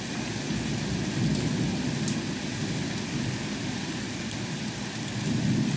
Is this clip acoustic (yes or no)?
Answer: yes